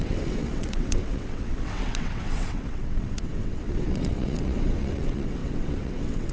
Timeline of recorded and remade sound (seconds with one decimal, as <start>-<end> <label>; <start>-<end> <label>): 0.0-6.3 remade